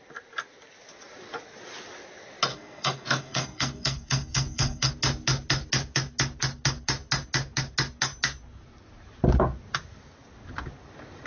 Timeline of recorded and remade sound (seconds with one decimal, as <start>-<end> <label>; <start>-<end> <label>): 0.0-2.5 recorded; 2.5-4.9 remade; 4.9-11.3 recorded